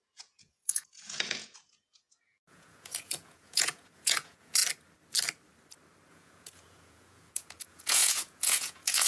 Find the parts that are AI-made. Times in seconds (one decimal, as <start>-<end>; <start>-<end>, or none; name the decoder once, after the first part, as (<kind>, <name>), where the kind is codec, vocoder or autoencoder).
0.0-4.6 (vocoder, Vocos); 6.1-9.1